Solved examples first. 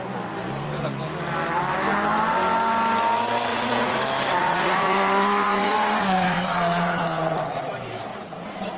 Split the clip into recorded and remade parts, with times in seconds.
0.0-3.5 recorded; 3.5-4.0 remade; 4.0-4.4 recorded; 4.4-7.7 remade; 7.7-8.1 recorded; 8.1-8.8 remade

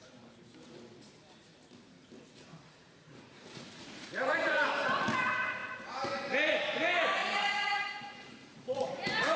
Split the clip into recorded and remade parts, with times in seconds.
0.0-2.5 recorded; 2.5-4.7 remade; 4.7-7.2 recorded; 7.2-9.4 remade

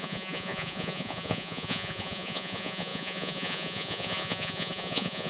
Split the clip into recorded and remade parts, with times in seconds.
0.0-5.3 remade

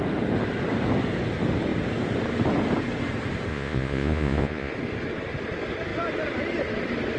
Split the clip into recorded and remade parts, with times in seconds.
0.0-3.5 recorded; 3.5-4.7 remade; 4.7-7.2 recorded

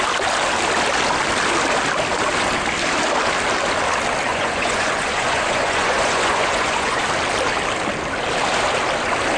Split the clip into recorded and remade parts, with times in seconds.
0.0-4.3 recorded; 4.3-7.0 remade; 7.0-9.4 recorded